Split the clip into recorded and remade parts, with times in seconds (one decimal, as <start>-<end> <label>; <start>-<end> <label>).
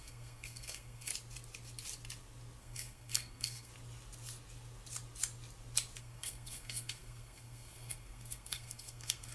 0.0-1.1 remade; 1.1-2.6 recorded; 2.6-3.7 remade; 3.7-6.0 recorded; 6.0-9.3 remade